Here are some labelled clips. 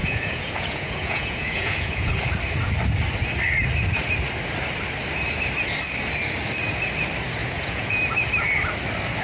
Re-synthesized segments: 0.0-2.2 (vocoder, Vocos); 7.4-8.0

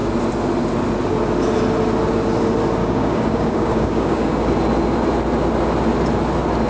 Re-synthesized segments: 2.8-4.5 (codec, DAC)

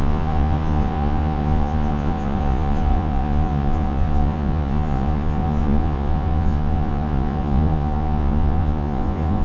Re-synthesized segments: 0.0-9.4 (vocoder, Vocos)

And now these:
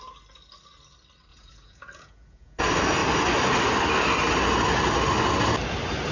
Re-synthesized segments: 1.3-2.6 (vocoder, Vocos)

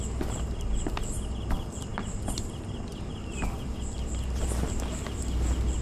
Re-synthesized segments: none